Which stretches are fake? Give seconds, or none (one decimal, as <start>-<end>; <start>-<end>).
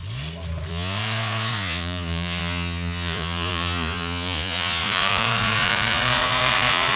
0.7-7.0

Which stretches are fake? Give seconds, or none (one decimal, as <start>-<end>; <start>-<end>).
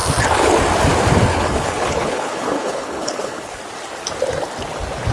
1.3-3.6